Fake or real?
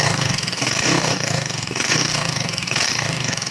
fake